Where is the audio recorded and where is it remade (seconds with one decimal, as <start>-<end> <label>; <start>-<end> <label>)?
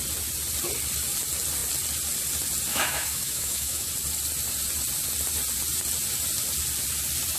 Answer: 0.0-2.7 recorded; 2.7-3.9 remade; 3.9-7.4 recorded